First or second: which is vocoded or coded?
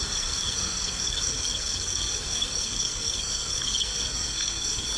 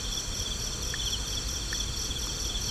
first